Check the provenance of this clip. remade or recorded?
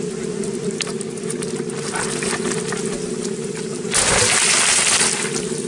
recorded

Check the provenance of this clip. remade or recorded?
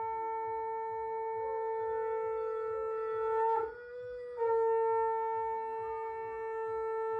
recorded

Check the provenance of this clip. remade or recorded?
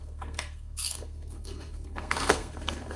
remade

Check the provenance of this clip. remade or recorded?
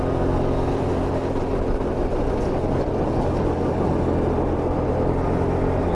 recorded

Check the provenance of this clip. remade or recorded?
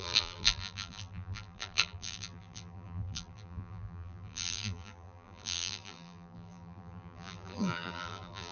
remade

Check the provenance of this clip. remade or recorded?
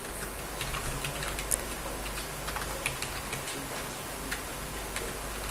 recorded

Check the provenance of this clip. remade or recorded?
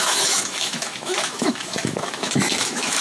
remade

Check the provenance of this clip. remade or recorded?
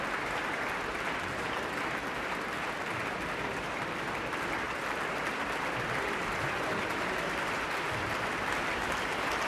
remade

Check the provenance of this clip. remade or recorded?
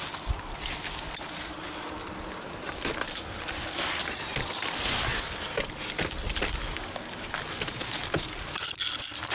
recorded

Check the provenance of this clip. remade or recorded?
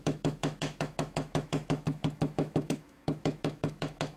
remade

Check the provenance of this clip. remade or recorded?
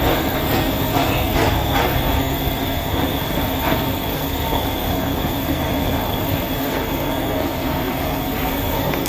remade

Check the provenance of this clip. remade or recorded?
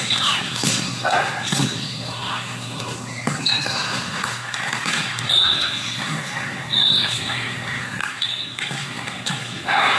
remade